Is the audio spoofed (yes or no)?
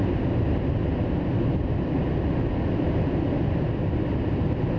no